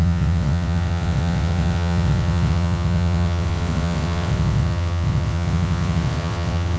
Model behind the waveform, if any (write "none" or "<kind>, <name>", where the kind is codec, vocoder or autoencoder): vocoder, WaveNeXt